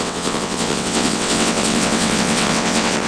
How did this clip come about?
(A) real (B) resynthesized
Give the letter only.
B